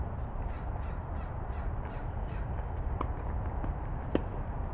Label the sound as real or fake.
real